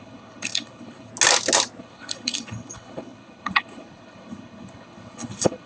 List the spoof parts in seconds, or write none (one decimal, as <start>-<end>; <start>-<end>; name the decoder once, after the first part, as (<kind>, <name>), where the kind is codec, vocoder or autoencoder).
0.0-1.1 (codec, HILCodec); 1.8-5.7